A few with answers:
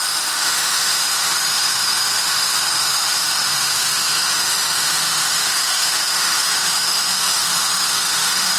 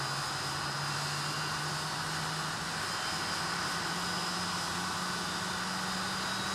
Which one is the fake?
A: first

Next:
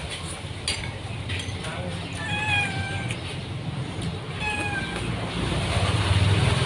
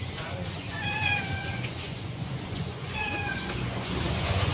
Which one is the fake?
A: second